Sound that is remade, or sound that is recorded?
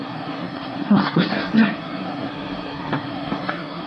remade